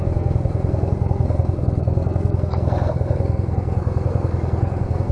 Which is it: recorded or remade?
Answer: remade